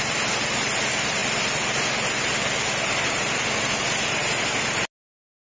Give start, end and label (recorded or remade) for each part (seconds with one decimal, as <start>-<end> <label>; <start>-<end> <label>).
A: 0.0-5.4 recorded